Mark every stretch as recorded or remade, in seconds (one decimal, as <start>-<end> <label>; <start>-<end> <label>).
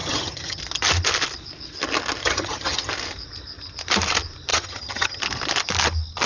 0.0-0.6 remade; 0.6-2.2 recorded; 2.2-2.9 remade; 2.9-4.5 recorded; 4.5-5.2 remade; 5.2-6.3 recorded